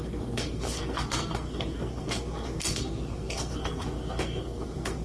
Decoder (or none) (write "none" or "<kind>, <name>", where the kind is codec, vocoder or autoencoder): codec, SNAC